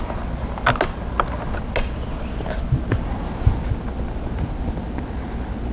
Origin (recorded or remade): recorded